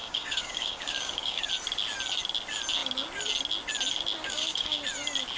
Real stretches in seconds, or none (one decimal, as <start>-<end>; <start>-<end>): 1.5-4.2; 4.8-5.4